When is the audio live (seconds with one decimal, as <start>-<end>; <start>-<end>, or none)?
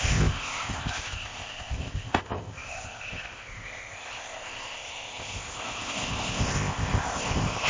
none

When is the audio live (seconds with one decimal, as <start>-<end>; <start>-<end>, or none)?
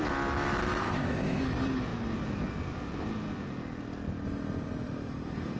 0.0-0.8; 1.4-5.6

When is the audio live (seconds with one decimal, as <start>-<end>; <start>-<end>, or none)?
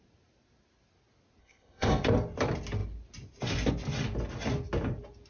0.0-1.4; 1.9-5.3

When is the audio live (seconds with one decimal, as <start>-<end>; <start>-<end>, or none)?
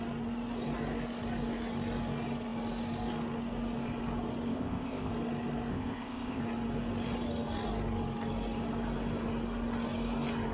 0.0-4.5; 5.1-5.7; 6.4-10.5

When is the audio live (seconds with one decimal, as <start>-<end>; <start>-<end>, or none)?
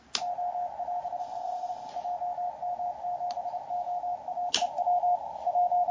0.0-1.2; 1.9-5.9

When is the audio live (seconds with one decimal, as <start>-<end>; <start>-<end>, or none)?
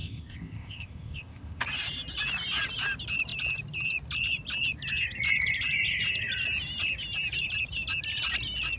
1.6-8.8